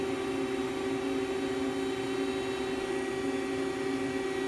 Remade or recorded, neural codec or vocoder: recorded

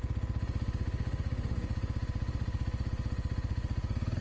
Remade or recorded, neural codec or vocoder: recorded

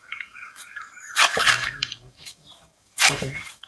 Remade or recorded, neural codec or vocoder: remade, codec, DAC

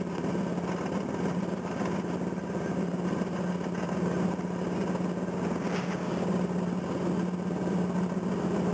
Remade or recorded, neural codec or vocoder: recorded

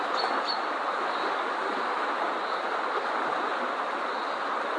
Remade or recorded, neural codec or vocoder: recorded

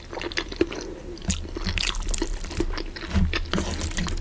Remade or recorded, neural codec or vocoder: recorded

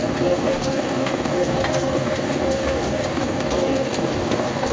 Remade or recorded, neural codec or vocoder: remade, codec, DAC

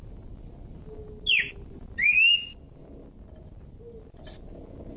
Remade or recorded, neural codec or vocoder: recorded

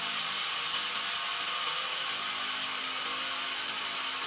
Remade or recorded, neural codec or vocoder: recorded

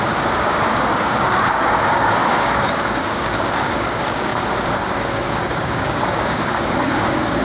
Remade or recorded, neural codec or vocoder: remade, codec, DAC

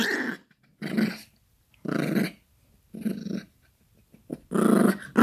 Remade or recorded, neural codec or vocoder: recorded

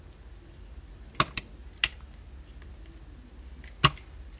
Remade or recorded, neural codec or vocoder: recorded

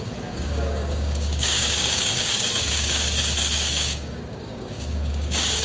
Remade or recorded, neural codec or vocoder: remade, codec, DAC